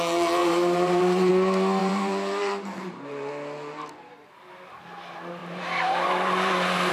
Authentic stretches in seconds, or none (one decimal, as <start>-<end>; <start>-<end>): 0.0-0.4; 1.3-1.8; 3.3-5.4